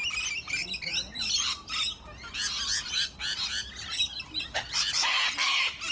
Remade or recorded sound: recorded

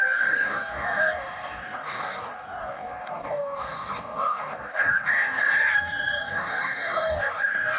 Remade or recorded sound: remade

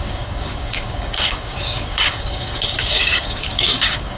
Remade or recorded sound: remade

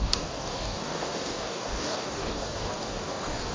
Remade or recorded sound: remade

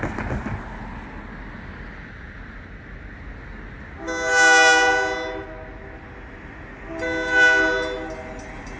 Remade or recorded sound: recorded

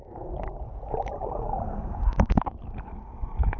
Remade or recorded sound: recorded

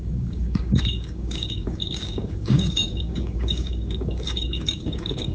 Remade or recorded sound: remade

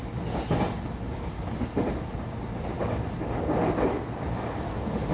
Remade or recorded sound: recorded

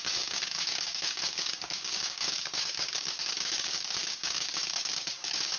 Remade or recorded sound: remade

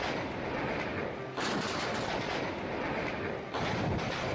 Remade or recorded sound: recorded